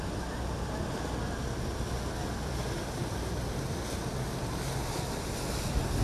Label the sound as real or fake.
real